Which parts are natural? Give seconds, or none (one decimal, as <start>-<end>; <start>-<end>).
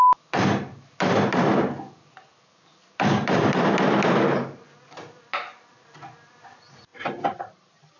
0.0-2.3; 6.1-6.9